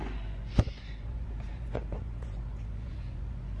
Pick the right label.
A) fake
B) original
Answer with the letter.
A